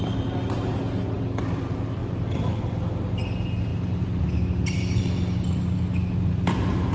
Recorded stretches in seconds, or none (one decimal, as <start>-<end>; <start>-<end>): 0.0-6.9